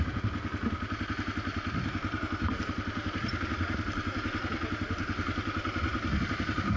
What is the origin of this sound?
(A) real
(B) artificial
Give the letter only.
A